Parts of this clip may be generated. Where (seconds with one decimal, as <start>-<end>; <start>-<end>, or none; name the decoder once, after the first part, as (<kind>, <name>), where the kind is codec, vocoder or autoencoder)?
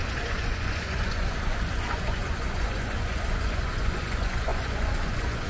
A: 0.0-5.5 (vocoder, Vocos)